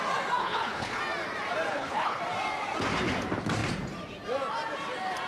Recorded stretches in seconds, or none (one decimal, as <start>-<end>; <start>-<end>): 0.0-0.4; 1.0-1.7; 2.2-5.3